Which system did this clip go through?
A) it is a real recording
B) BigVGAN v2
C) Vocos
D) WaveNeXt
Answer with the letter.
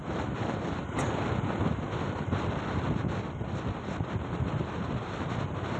A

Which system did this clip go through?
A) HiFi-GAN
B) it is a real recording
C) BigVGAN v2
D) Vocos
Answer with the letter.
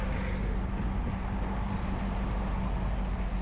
B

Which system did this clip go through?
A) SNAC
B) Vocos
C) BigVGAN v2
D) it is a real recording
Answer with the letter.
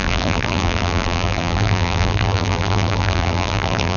C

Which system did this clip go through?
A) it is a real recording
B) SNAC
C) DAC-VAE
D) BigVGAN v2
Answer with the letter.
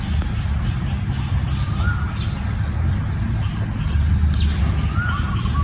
A